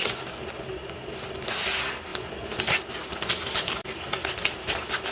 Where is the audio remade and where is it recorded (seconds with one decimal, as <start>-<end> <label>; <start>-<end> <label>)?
0.0-5.1 recorded